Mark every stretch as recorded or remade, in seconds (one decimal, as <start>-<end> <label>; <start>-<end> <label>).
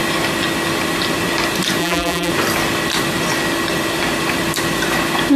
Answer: 0.0-1.8 recorded; 1.8-2.3 remade; 2.3-5.4 recorded